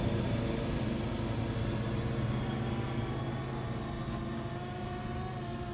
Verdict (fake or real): real